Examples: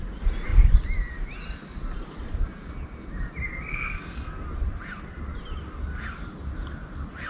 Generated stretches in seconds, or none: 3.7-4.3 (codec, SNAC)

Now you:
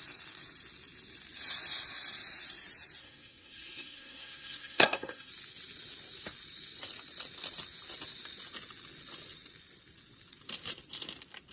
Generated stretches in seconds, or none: 3.0-5.3 (codec, SNAC)

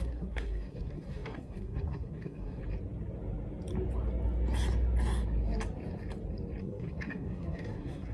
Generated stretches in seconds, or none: 0.0-2.6 (codec, SNAC); 6.6-8.1